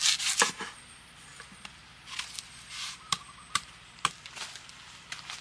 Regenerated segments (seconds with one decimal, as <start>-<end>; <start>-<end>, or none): none